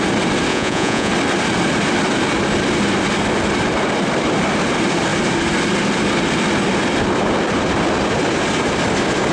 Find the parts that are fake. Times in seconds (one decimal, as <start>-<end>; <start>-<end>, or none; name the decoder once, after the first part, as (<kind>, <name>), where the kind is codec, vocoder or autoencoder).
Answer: 0.5-1.1 (vocoder, Vocos)